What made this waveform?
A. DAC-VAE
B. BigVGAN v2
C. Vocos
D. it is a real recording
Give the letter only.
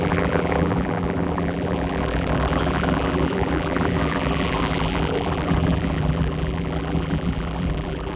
B